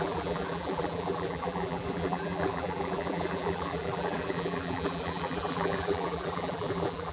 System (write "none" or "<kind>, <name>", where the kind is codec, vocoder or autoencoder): vocoder, BigVGAN v2